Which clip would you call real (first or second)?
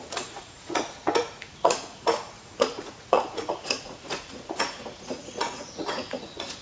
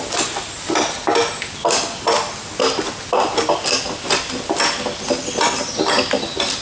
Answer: second